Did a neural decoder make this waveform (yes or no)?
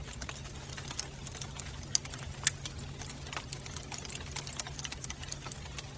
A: no